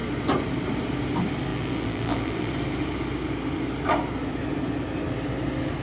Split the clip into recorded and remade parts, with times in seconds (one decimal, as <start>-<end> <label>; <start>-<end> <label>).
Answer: 0.0-1.5 recorded; 1.5-2.5 remade; 2.5-5.8 recorded